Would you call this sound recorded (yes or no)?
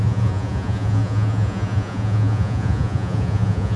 no